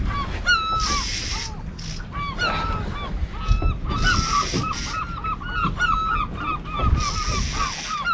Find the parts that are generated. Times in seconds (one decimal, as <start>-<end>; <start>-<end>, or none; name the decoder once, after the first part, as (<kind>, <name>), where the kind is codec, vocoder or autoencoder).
none